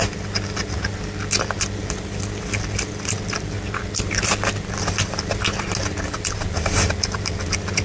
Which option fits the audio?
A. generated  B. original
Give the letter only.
B